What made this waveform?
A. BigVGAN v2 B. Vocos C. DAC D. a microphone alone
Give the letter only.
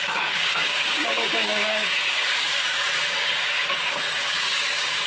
C